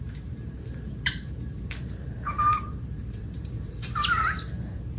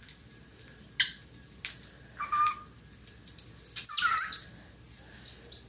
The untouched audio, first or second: second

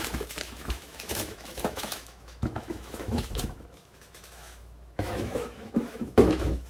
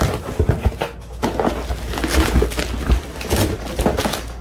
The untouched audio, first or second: second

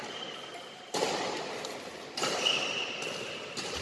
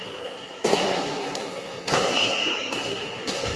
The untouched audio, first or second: first